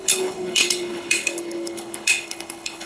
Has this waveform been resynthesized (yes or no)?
yes